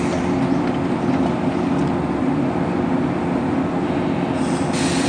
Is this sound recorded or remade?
recorded